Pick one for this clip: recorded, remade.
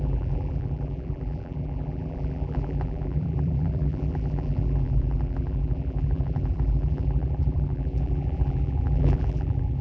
remade